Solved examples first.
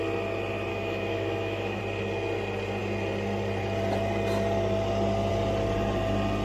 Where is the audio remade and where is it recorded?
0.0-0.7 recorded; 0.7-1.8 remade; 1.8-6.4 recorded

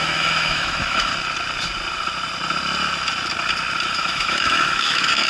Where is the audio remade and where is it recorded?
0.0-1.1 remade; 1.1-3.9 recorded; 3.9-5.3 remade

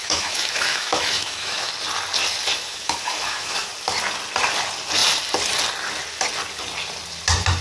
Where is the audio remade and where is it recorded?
0.0-1.7 remade; 1.7-2.5 recorded; 2.5-3.7 remade; 3.7-7.6 recorded

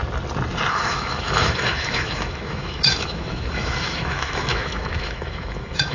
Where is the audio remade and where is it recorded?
0.0-0.7 recorded; 0.7-5.9 remade